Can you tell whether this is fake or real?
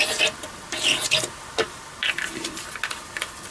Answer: real